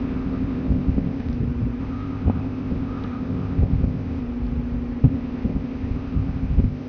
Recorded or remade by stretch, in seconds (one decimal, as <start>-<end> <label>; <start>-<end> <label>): 0.0-1.3 remade; 1.3-1.8 recorded; 1.8-4.2 remade; 4.2-5.0 recorded; 5.0-6.9 remade